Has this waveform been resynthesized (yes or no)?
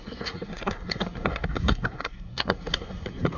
yes